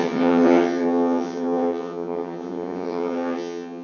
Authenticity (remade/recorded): remade